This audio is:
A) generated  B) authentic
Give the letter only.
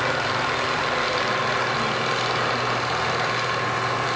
B